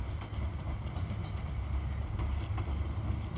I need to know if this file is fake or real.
real